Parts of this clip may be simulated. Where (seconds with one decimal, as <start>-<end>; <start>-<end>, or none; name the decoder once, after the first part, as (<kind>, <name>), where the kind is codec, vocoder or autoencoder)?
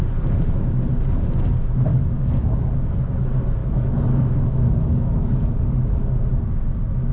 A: 1.9-2.6 (codec, DAC); 3.6-5.8